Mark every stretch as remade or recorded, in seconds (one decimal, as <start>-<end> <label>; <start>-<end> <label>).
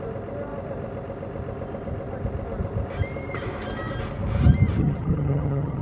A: 0.0-4.8 recorded; 4.8-5.8 remade